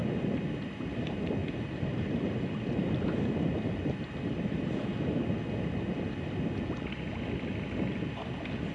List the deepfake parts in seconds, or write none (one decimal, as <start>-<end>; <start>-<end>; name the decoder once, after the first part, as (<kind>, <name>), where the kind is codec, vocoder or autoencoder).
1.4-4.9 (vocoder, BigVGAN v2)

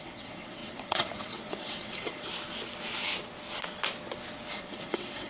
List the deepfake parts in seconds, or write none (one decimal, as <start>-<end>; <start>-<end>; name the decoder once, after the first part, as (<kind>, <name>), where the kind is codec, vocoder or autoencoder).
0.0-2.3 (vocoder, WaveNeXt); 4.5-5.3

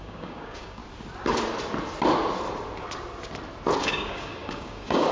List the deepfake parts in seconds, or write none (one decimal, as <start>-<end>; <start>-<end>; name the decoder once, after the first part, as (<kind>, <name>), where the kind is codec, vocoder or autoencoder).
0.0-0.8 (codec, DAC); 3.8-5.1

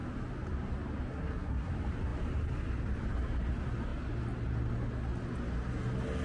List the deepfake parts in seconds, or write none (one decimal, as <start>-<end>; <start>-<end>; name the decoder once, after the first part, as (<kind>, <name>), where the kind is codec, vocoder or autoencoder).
1.1-1.7 (codec, SNAC)

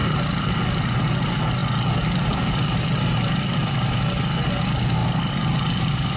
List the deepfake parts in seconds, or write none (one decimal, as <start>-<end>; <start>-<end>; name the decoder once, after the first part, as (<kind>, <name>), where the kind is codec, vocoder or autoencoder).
0.0-0.9 (vocoder, BigVGAN v2); 1.6-4.0; 5.0-6.2

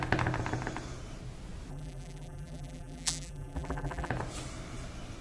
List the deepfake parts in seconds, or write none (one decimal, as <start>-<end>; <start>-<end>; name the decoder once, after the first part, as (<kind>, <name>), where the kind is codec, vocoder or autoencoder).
1.7-4.1 (vocoder, BigVGAN v2)

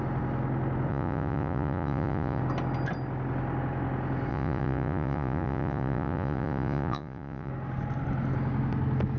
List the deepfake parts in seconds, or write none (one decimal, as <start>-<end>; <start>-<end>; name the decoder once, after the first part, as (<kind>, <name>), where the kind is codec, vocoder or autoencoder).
0.9-2.4 (vocoder, Vocos); 4.3-7.5

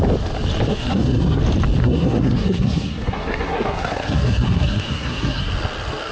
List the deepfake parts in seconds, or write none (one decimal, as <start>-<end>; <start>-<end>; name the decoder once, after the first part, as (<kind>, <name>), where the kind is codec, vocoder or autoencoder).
0.7-1.4 (codec, SNAC); 1.8-5.5